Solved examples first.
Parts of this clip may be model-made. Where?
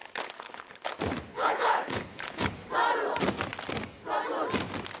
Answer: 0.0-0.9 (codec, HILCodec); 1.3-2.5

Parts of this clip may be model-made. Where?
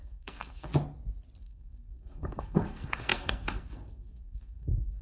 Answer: 0.0-0.7 (codec, SNAC); 1.4-5.0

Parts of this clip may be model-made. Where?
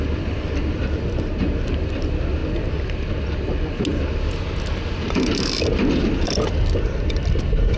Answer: none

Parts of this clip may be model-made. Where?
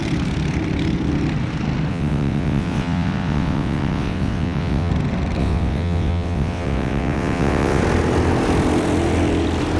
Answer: 1.9-4.9 (vocoder, WaveNeXt); 5.4-7.8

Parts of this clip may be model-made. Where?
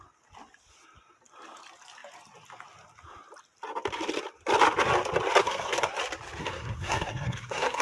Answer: 5.4-6.0 (codec, SNAC); 6.4-7.8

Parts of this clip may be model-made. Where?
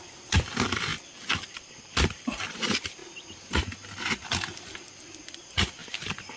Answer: 0.0-3.0 (vocoder, BigVGAN v2); 4.8-5.8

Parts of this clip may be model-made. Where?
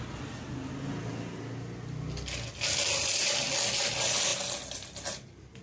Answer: none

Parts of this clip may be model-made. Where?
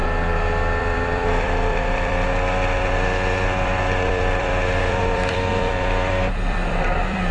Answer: 0.0-7.3 (vocoder, BigVGAN v2)